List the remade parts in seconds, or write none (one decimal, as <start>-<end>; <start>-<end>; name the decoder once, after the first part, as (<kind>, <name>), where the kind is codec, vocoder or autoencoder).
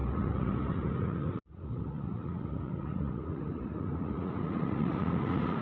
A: 0.0-5.6 (vocoder, Vocos)